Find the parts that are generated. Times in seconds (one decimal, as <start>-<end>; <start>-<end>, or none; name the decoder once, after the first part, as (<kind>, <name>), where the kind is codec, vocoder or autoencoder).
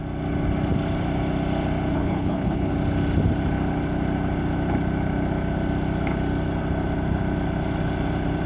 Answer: 1.9-2.7 (codec, HILCodec)